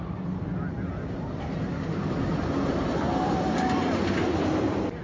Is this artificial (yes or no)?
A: no